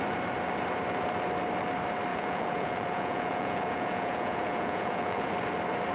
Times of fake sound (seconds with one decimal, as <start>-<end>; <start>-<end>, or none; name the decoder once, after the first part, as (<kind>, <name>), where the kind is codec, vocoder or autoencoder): 2.1-5.3 (vocoder, Vocos)